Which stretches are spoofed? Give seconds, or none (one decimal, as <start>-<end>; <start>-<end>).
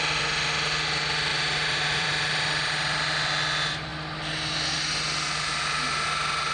1.3-2.1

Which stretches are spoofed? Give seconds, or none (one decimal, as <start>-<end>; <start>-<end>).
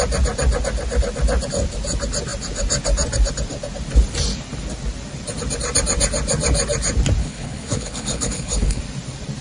7.2-8.8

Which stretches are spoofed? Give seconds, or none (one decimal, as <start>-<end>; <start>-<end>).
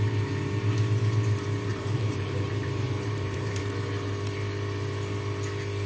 1.7-3.6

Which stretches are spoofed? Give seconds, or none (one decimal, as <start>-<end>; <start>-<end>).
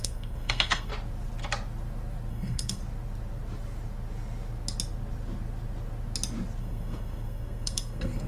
0.0-0.9; 2.3-2.8; 6.6-8.3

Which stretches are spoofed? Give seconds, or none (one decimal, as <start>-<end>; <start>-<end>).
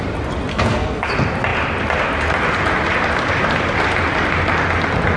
0.5-1.1